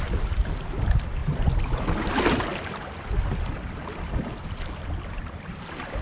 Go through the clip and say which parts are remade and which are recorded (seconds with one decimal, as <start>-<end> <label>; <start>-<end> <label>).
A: 0.0-6.0 recorded